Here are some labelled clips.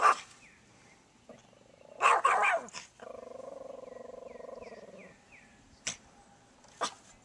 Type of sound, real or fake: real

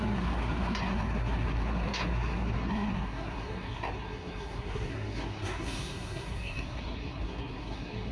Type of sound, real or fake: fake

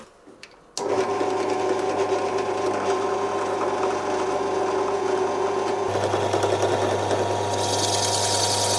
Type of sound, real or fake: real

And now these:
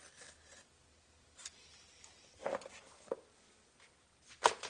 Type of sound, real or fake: real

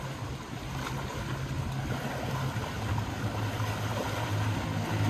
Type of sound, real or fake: real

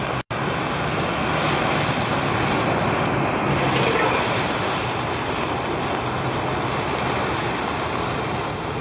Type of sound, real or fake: real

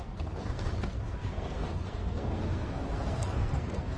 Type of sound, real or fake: fake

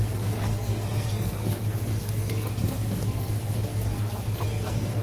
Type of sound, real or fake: fake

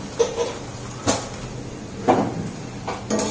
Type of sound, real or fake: real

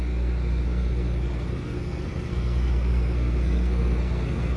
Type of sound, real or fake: fake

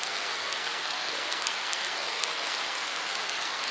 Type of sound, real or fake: fake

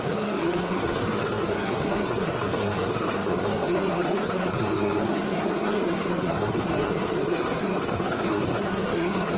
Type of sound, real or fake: fake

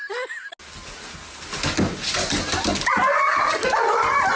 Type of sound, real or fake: real